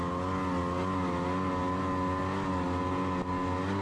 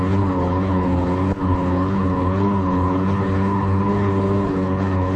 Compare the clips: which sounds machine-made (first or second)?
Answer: second